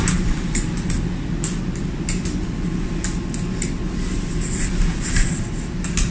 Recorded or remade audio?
recorded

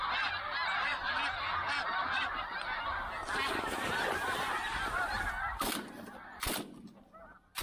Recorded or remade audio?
recorded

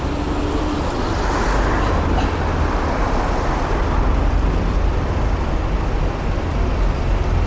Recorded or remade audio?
recorded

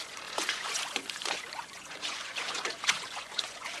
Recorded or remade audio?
remade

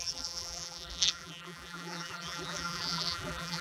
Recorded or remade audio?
remade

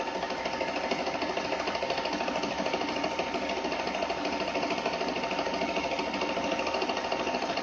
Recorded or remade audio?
recorded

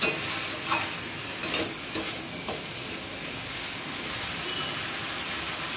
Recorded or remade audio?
recorded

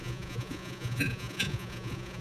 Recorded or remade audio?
remade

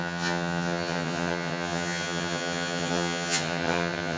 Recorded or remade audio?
remade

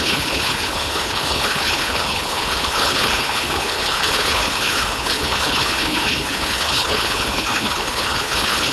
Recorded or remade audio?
remade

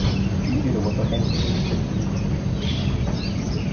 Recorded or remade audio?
recorded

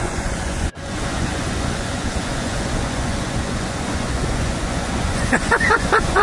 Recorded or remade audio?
remade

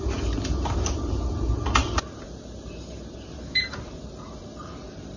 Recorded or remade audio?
remade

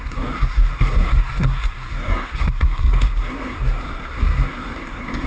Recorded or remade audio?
remade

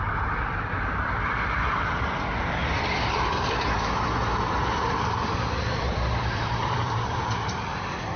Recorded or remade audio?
remade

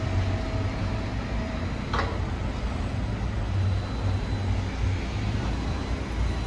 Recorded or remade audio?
recorded